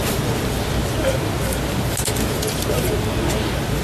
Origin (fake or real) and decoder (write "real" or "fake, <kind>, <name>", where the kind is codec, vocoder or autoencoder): real